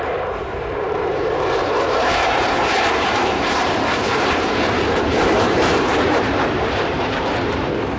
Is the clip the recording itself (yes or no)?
no